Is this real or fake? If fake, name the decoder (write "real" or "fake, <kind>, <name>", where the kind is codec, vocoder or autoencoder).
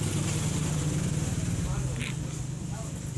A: real